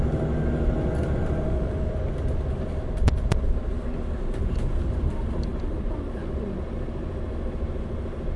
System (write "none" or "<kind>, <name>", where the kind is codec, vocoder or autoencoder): none